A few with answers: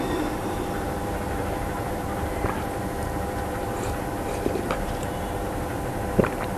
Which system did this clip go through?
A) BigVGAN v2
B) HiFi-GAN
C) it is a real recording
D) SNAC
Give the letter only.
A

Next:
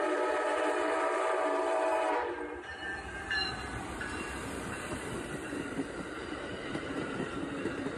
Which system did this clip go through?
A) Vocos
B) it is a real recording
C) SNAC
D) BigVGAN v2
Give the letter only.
D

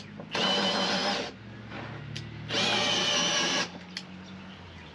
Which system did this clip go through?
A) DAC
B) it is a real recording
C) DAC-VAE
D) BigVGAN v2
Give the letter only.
B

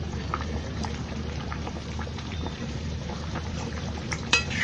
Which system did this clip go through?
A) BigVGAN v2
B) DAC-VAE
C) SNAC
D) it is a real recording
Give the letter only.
A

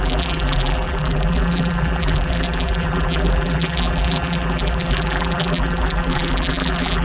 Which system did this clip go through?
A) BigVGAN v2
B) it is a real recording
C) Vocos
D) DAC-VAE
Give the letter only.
A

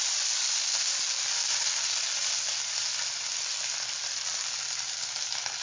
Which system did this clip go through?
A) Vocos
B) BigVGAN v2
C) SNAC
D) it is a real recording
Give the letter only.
D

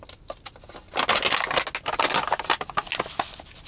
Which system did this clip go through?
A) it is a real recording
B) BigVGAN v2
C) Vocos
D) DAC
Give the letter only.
A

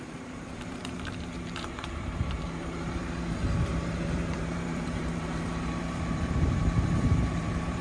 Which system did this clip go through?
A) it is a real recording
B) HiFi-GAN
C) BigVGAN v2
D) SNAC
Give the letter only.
C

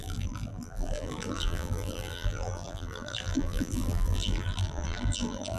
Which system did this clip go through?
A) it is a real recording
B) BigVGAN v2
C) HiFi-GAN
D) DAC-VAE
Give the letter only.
B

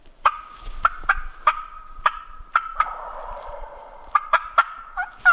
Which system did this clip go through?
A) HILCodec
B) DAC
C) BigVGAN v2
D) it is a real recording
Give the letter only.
C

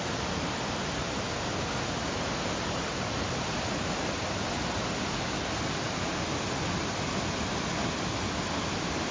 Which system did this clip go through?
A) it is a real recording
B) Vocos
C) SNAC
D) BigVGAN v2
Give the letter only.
A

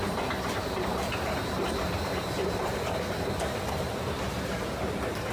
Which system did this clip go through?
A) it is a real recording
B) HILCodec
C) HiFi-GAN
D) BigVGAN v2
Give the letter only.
D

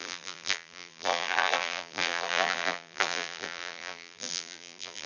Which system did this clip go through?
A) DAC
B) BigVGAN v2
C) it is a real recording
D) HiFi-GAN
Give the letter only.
B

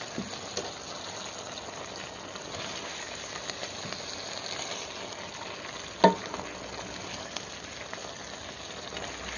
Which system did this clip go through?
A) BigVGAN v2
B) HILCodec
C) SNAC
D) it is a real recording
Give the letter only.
D